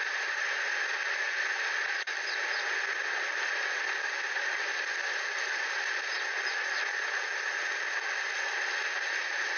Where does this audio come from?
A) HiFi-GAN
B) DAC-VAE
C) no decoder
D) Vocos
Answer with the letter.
C